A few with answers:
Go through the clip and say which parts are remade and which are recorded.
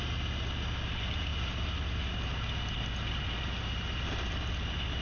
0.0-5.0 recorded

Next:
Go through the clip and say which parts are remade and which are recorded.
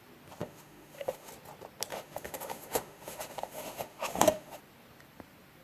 0.0-0.4 recorded; 0.4-1.3 remade; 1.3-1.9 recorded; 1.9-4.6 remade; 4.6-5.6 recorded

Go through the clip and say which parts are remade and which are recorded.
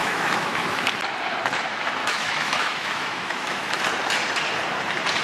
0.0-0.9 remade; 0.9-2.0 recorded; 2.0-3.8 remade; 3.8-5.2 recorded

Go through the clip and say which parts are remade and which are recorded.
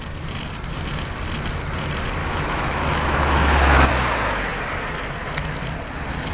0.0-2.2 recorded; 2.2-3.9 remade; 3.9-6.3 recorded